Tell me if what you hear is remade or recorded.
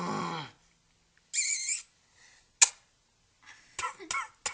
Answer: recorded